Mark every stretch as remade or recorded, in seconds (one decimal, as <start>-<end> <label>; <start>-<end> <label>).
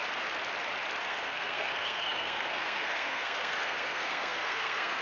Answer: 0.0-1.0 recorded; 1.0-5.0 remade